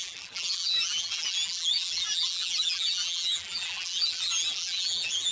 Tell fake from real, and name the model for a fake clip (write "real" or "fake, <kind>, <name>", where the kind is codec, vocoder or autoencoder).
fake, vocoder, BigVGAN v2